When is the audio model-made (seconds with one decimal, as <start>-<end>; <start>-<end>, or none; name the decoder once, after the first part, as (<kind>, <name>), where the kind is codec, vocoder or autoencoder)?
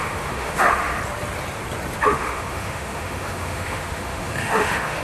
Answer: 0.0-0.9 (autoencoder, DAC-VAE); 2.0-5.0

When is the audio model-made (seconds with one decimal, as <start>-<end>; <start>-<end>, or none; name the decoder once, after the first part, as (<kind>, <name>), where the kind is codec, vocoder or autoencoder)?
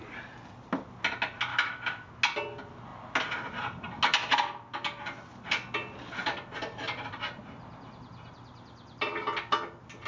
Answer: 1.5-2.1 (autoencoder, DAC-VAE)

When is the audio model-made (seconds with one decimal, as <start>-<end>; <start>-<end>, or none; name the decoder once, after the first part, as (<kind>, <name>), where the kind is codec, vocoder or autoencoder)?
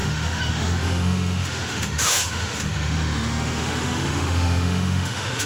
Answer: 0.0-5.5 (autoencoder, DAC-VAE)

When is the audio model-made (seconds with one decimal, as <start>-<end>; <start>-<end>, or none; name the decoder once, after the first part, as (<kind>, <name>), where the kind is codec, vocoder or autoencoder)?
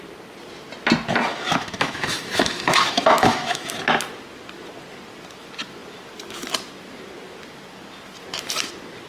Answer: 1.3-3.7 (autoencoder, DAC-VAE)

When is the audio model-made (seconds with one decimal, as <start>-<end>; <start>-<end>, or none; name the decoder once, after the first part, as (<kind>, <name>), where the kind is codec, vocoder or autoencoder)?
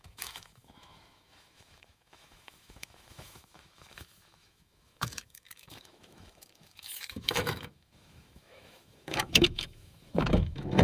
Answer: 0.0-10.8 (autoencoder, DAC-VAE)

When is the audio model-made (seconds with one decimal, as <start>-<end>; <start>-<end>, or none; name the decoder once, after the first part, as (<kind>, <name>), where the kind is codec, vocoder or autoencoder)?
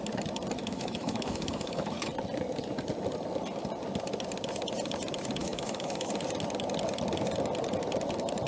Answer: 0.6-2.1 (autoencoder, DAC-VAE); 5.4-6.1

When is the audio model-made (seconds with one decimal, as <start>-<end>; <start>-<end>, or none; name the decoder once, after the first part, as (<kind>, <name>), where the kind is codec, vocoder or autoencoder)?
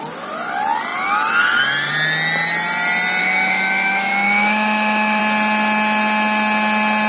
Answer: 3.2-5.2 (autoencoder, DAC-VAE)